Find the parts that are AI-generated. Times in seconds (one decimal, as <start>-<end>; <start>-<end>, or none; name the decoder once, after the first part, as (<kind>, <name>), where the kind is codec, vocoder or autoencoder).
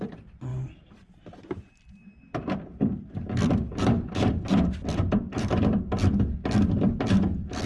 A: 0.5-2.6 (vocoder, BigVGAN v2); 3.7-5.8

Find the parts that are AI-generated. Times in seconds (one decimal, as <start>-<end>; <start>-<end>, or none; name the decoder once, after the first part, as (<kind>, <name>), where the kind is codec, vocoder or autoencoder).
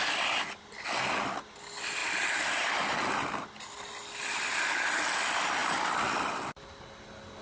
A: none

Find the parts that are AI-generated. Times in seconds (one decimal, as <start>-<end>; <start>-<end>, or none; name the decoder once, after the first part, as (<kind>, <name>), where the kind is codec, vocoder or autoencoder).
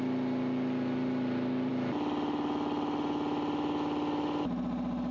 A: none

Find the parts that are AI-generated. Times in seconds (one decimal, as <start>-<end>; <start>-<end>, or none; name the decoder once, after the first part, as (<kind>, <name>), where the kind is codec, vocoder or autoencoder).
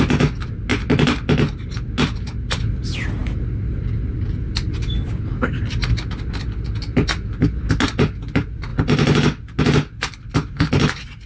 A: none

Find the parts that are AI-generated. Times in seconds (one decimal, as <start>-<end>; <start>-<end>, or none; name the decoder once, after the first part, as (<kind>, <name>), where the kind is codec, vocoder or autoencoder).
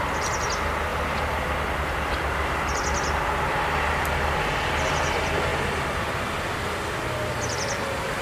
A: none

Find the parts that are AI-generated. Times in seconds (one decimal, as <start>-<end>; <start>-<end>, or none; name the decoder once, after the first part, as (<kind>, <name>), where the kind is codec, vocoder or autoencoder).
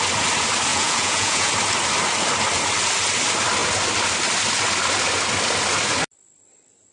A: 0.7-1.5 (vocoder, Vocos)